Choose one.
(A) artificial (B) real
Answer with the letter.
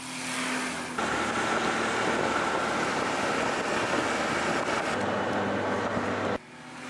B